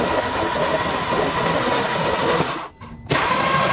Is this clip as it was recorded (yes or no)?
yes